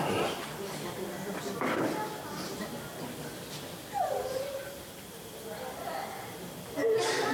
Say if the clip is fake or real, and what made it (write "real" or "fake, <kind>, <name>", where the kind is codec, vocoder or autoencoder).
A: real